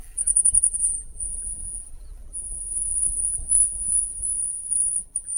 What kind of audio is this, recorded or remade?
remade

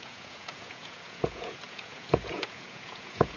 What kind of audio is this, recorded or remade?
remade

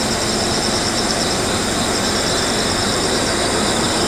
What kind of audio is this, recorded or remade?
remade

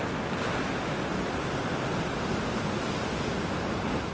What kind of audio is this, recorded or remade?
recorded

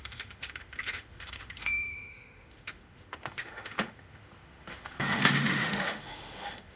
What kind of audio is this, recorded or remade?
remade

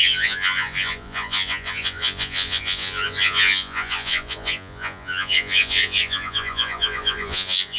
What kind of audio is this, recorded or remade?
remade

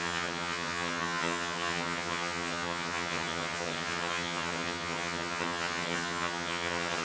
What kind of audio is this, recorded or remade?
remade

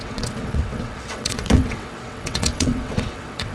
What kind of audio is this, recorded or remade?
remade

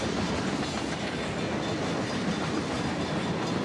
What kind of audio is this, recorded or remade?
recorded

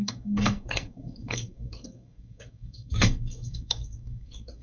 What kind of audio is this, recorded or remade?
remade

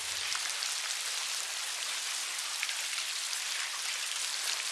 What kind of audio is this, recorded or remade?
recorded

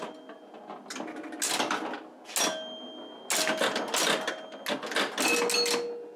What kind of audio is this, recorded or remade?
recorded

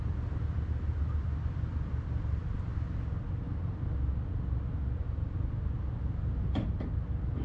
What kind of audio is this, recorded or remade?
recorded